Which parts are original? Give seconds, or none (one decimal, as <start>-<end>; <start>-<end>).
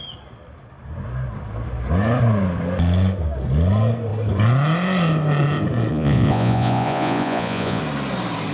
0.0-5.9; 7.8-8.5